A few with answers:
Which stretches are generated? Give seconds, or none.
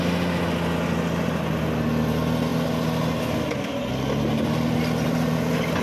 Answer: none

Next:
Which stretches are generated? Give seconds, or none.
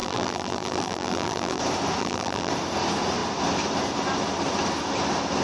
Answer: 0.0-1.6 (vocoder, BigVGAN v2); 2.0-2.5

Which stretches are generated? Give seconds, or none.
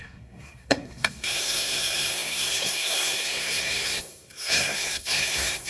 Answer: 0.0-5.7 (codec, SNAC)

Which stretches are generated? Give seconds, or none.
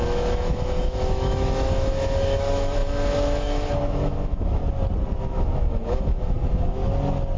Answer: 0.0-4.6 (autoencoder, DAC-VAE); 5.2-6.8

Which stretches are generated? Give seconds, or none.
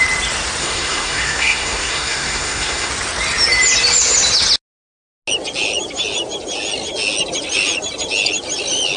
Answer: 0.6-2.9 (codec, SNAC)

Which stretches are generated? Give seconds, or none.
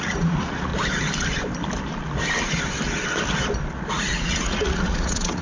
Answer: 0.0-0.7 (vocoder, Vocos); 3.9-5.4